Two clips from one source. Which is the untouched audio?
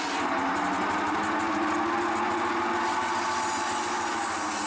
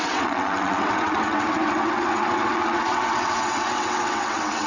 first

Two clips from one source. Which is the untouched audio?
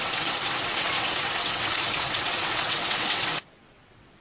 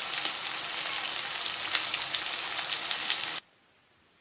second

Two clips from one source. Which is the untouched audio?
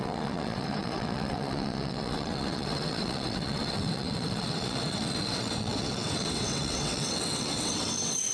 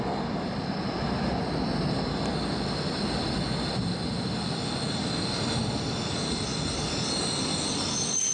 second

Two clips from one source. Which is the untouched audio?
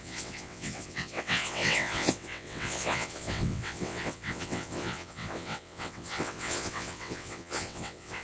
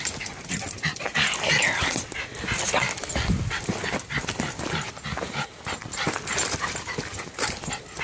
second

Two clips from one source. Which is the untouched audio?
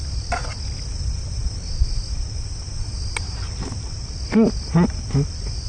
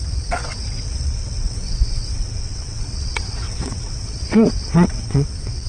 first